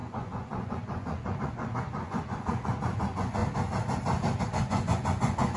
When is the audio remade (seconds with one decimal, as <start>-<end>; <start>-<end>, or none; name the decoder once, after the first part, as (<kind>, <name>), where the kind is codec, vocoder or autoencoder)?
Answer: 0.0-3.4 (vocoder, Vocos); 4.4-5.6